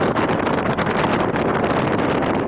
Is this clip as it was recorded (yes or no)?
yes